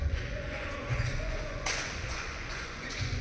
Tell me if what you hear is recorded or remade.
remade